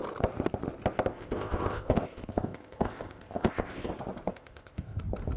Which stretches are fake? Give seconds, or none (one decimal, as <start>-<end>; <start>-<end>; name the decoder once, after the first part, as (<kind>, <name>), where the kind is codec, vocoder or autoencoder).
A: 1.1-3.9 (codec, ZipCodec); 4.3-5.0